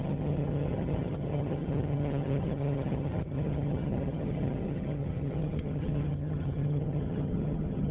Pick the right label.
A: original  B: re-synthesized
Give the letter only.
B